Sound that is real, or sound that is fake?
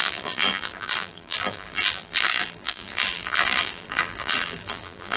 fake